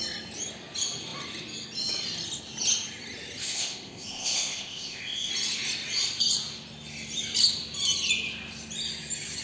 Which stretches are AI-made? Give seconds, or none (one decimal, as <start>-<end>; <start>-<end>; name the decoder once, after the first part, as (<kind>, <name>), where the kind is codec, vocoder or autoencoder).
3.4-5.3 (codec, ZipCodec)